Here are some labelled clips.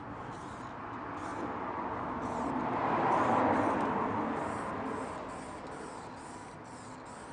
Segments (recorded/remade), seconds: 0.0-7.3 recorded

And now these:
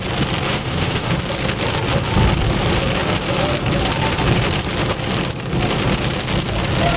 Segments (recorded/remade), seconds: 0.0-0.5 recorded; 0.5-1.2 remade; 1.2-7.0 recorded